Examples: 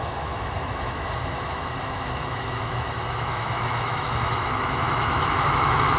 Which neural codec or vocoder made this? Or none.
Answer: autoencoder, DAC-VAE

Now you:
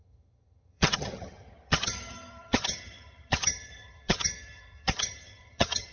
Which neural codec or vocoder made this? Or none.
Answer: vocoder, HiFi-GAN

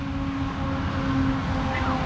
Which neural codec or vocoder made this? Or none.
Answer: none